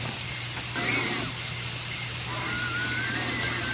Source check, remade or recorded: recorded